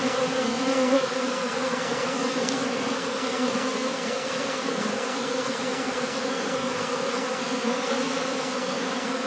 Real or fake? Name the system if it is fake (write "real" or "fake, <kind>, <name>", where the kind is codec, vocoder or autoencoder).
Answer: fake, codec, SNAC